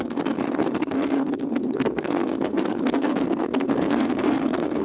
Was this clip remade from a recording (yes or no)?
yes